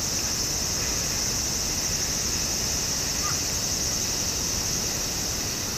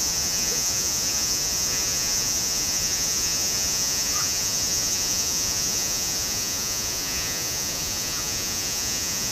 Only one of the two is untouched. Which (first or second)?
first